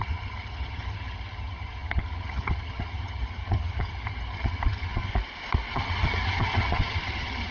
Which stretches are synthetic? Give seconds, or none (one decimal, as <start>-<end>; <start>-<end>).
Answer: 0.0-5.1; 5.7-7.5